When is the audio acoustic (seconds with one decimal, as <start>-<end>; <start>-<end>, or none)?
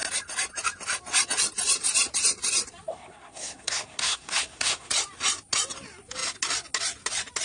0.0-2.9; 4.9-7.4